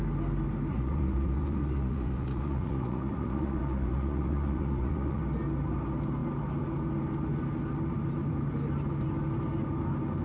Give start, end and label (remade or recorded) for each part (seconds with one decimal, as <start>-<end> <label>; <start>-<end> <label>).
0.0-0.7 recorded; 0.7-5.2 remade; 5.2-10.2 recorded